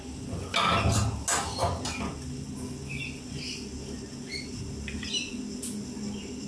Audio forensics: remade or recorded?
recorded